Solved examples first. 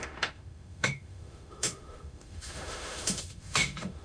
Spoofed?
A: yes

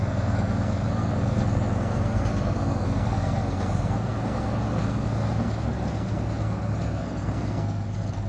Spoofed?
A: yes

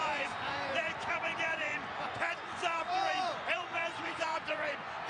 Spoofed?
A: yes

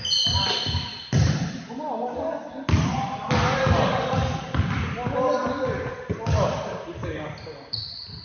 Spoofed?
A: no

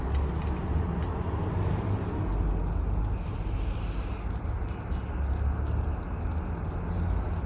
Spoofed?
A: no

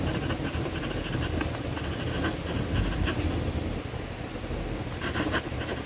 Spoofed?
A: no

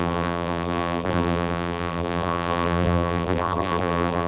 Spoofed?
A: yes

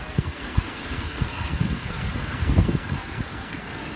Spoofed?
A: yes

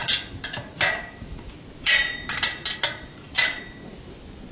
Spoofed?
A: no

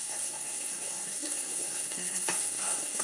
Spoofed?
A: yes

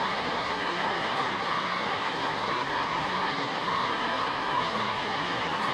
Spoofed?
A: yes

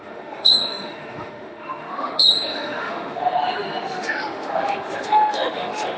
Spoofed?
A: yes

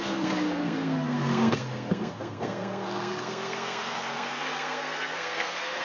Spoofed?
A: yes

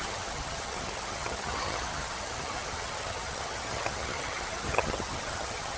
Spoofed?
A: yes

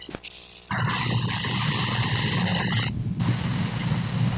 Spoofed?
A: no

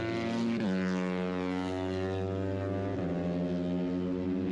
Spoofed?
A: no